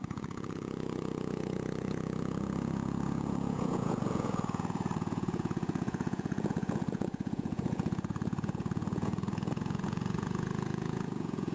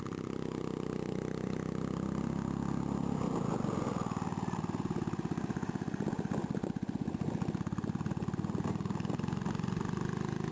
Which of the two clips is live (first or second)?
second